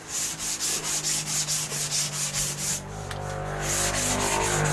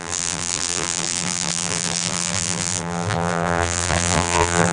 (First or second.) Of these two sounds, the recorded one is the first